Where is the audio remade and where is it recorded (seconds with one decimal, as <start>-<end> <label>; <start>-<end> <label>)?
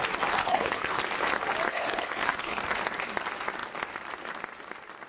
0.0-0.4 recorded; 0.4-1.0 remade; 1.0-1.7 recorded; 1.7-2.6 remade; 2.6-5.1 recorded